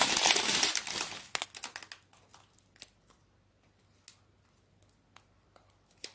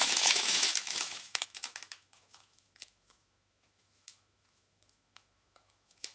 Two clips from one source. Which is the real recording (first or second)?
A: first